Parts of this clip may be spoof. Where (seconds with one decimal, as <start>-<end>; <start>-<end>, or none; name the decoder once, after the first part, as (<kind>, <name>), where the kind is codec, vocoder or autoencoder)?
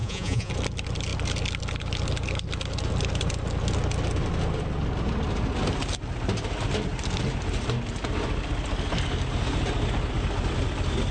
0.0-0.5 (vocoder, Vocos)